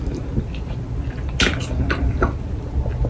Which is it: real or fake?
real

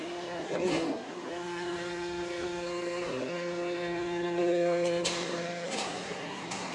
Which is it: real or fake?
fake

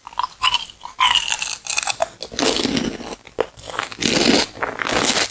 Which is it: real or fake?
real